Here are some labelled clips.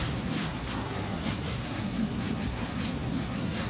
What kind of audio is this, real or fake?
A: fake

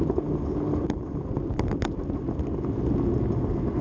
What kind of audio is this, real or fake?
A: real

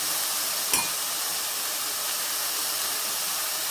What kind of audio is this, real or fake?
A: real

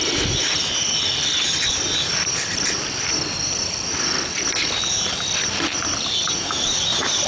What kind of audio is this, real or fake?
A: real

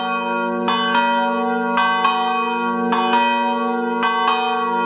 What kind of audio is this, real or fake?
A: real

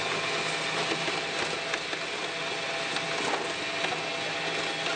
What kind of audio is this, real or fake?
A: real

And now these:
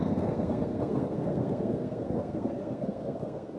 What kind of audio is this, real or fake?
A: fake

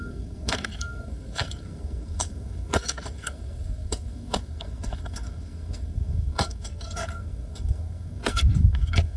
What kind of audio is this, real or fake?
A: fake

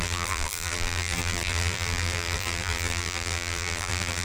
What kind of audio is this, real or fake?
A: fake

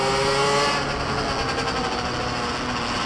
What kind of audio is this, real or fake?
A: real